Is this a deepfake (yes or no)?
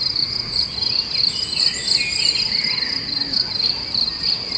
no